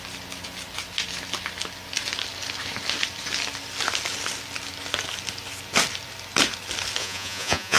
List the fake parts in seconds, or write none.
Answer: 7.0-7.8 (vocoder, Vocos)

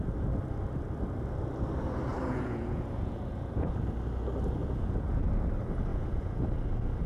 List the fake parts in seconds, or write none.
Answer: 2.1-3.7 (vocoder, Vocos); 4.6-5.3; 5.9-6.4

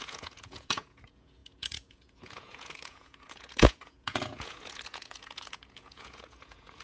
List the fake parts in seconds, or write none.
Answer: 0.0-6.8 (vocoder, Vocos)

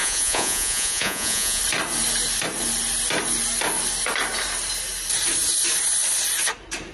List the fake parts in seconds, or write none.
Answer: 0.0-1.6 (vocoder, Vocos)